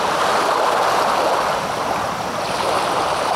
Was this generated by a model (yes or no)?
no